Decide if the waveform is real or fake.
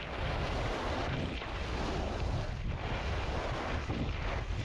real